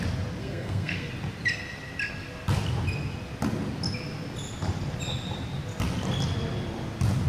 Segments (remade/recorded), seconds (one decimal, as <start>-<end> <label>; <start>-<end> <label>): 0.0-0.4 recorded; 0.4-1.1 remade; 1.1-7.3 recorded